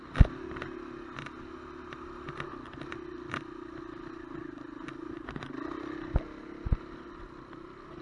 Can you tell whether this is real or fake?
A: real